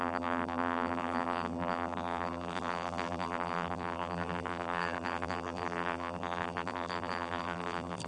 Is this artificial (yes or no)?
yes